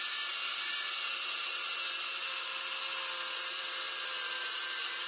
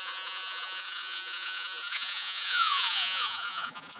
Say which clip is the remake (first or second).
second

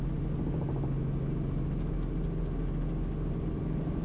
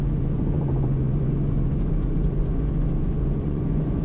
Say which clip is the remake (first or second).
second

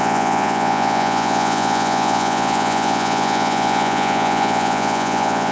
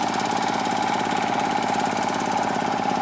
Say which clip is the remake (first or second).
first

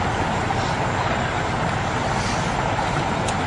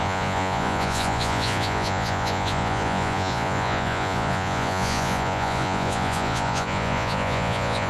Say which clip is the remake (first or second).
second